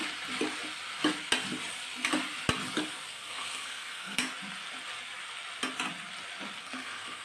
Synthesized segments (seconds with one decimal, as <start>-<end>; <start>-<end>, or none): 3.1-4.2; 6.6-7.2